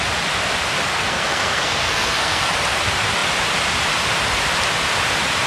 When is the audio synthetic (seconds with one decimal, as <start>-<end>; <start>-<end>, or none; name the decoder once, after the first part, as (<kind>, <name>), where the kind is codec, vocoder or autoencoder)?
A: 0.9-2.5 (codec, SNAC)